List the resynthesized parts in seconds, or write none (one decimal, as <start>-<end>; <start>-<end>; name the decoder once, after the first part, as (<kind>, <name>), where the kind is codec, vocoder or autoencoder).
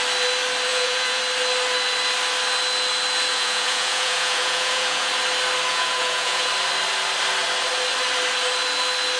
0.7-1.2 (vocoder, Vocos); 3.3-5.1; 5.7-6.5